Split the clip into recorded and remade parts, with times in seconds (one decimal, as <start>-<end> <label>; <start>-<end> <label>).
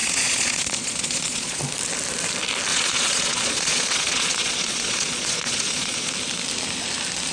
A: 0.0-1.6 remade; 1.6-2.7 recorded; 2.7-6.1 remade; 6.1-7.3 recorded